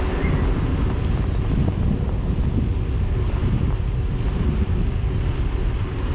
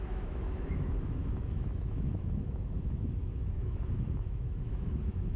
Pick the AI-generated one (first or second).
second